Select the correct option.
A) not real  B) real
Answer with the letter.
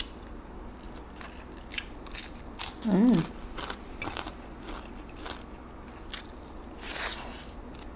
B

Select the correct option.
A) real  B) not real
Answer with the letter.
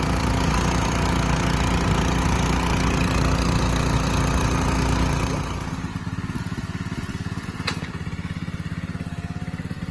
A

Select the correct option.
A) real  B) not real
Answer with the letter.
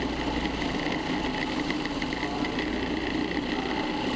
A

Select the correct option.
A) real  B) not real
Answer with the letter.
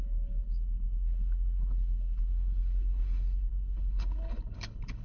B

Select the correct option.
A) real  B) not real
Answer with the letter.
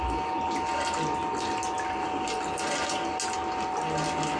A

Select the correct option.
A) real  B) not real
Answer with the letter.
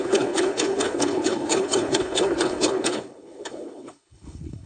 B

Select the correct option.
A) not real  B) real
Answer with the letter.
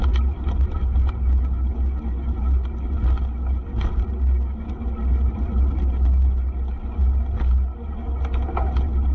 B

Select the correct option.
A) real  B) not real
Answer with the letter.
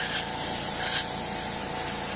A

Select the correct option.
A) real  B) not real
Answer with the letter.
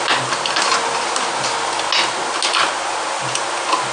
A